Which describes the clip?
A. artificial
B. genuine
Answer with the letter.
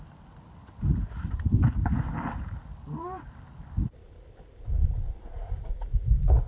B